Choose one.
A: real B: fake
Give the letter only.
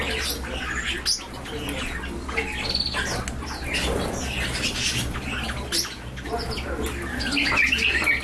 A